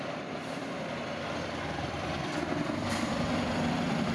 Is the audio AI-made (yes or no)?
yes